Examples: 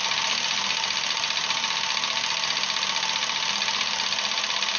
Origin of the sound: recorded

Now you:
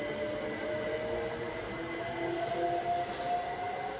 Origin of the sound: recorded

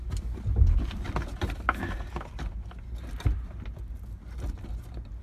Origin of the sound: recorded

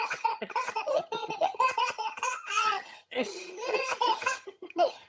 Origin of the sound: remade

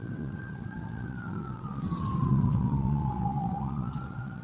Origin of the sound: remade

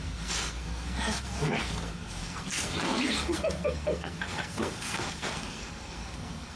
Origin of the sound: remade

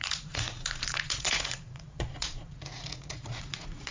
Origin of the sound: remade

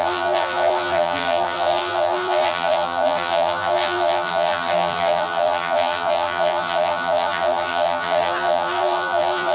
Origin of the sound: remade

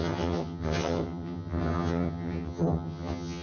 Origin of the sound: remade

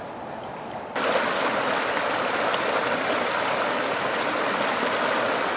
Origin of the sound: recorded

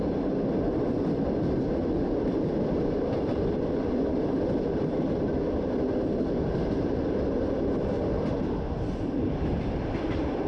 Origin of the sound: remade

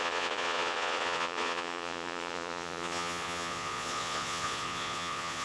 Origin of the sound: remade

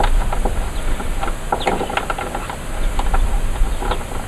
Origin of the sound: recorded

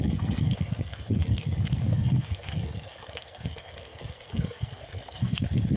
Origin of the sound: remade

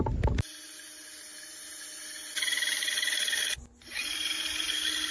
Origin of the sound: recorded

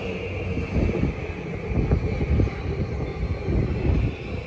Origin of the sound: recorded